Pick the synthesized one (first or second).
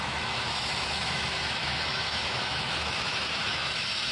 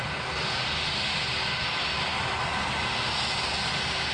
first